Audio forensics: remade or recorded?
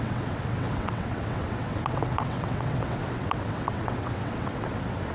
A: remade